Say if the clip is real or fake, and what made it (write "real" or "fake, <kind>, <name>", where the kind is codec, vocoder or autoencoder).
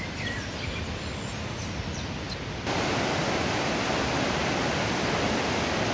real